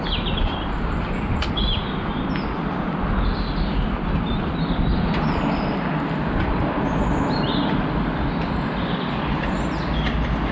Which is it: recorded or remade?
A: recorded